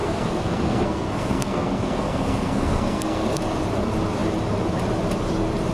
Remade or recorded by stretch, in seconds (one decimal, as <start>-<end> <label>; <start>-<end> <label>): 0.0-3.4 remade; 3.4-5.7 recorded